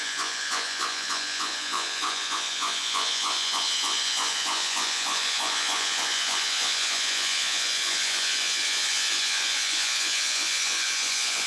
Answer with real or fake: fake